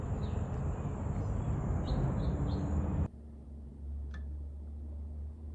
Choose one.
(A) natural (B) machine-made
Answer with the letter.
A